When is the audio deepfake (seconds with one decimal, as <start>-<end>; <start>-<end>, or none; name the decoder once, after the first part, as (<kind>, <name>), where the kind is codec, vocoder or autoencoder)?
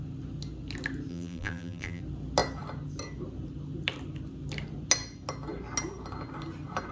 1.1-2.0 (vocoder, BigVGAN v2)